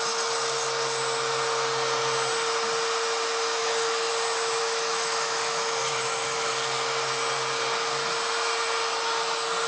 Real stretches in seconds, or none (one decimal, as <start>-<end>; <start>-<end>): 0.0-3.6; 4.1-4.6; 6.5-9.7